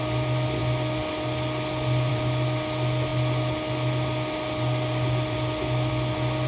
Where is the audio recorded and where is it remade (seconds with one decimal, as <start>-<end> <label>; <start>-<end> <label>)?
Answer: 0.0-6.5 recorded

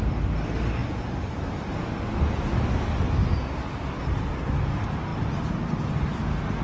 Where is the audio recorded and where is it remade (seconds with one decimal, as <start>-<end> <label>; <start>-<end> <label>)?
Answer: 0.0-6.6 recorded

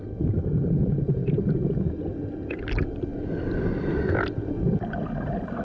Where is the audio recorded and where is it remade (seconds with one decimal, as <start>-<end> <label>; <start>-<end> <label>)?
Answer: 0.0-5.6 recorded